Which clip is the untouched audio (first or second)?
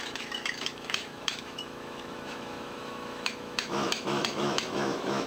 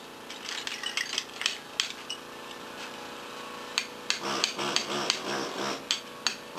second